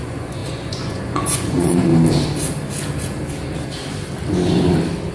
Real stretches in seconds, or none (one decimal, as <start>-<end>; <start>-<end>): 1.9-5.1